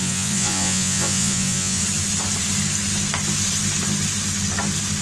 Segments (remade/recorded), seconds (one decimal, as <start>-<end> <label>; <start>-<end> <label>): 0.0-1.8 remade; 1.8-5.0 recorded